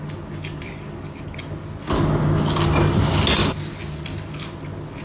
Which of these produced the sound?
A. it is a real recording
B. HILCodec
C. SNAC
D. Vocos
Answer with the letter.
A